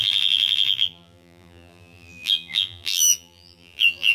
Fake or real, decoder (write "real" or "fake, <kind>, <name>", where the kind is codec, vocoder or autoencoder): fake, vocoder, BigVGAN v2